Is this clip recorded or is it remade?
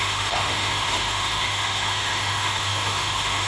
remade